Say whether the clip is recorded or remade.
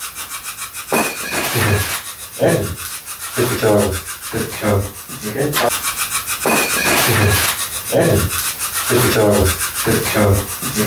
recorded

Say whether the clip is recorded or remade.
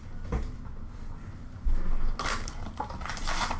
recorded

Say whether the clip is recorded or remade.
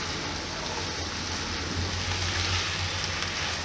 recorded